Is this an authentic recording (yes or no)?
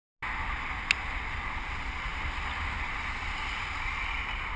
yes